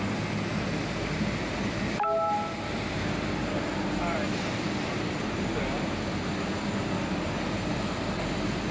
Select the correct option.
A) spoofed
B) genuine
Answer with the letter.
B